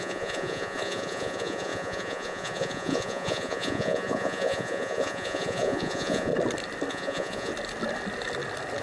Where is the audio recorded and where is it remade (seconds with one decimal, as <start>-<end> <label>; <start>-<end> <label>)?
0.0-6.3 remade; 6.3-6.9 recorded; 6.9-7.5 remade; 7.5-8.8 recorded